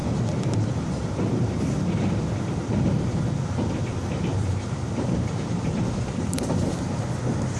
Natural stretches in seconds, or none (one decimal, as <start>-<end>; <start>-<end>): 0.0-4.3; 6.5-7.6